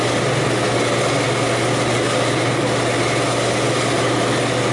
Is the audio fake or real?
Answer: real